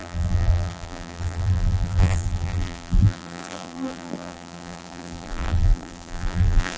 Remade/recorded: remade